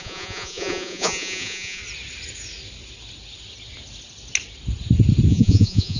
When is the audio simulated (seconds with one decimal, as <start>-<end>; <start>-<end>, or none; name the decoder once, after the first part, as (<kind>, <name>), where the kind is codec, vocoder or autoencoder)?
0.0-1.8 (vocoder, Vocos); 5.3-6.0